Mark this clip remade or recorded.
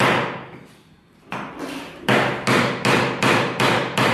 recorded